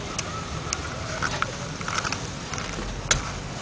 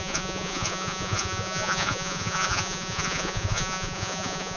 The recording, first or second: first